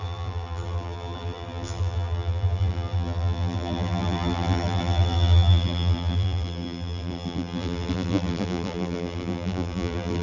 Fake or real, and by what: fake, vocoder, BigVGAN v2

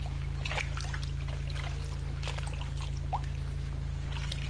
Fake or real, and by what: real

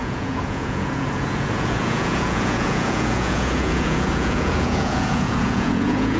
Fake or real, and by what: fake, vocoder, Vocos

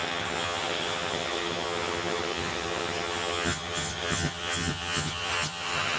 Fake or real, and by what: fake, vocoder, HiFi-GAN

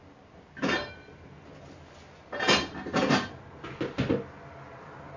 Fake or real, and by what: real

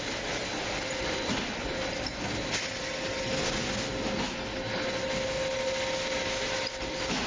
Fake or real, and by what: real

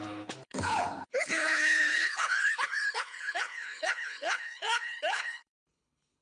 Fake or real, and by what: fake, codec, HILCodec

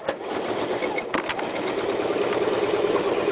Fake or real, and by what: real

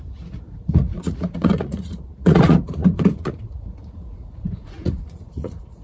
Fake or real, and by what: fake, vocoder, Vocos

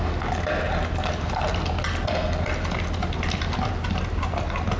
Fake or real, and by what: real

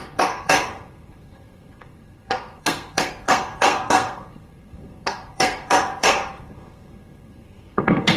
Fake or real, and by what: fake, codec, SNAC